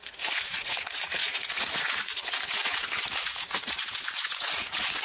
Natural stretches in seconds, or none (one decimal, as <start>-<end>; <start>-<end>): 2.6-3.1; 3.9-4.5